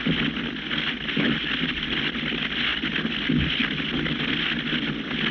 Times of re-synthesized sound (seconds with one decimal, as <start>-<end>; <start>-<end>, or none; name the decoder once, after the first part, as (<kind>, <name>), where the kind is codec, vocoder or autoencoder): none